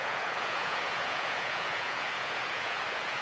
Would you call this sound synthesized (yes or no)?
yes